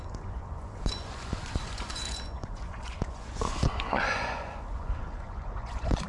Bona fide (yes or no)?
no